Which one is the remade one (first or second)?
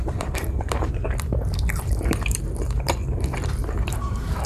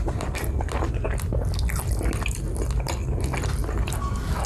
first